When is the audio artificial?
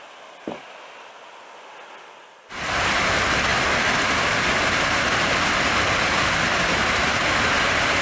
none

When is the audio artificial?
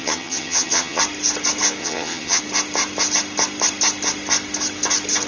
0.0-1.0 (vocoder, HiFi-GAN); 1.8-2.4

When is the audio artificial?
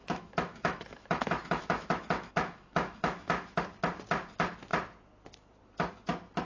0.0-3.6 (autoencoder, DAC-VAE)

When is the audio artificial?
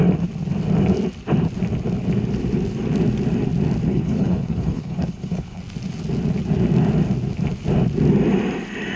3.9-5.6 (codec, HILCodec)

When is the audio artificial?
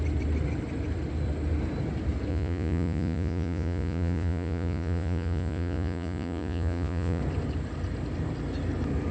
2.3-7.2 (vocoder, Vocos)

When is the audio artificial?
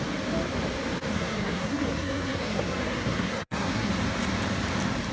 1.1-3.9 (codec, SNAC)